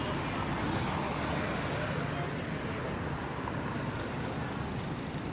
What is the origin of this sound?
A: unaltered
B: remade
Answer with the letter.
A